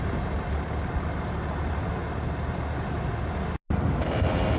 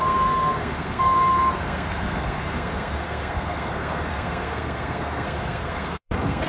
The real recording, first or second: first